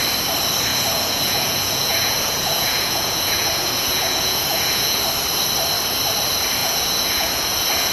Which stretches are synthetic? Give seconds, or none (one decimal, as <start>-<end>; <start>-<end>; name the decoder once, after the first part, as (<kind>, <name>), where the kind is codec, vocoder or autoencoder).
0.7-5.0 (vocoder, Vocos); 6.6-7.9